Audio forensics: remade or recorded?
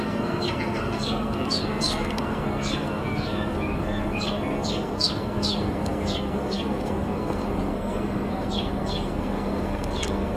remade